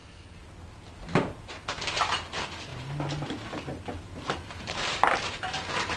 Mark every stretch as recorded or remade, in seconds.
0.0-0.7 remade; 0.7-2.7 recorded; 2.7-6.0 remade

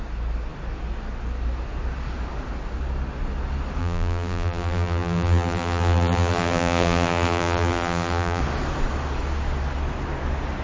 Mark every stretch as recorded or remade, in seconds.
0.0-3.8 recorded; 3.8-8.4 remade; 8.4-10.6 recorded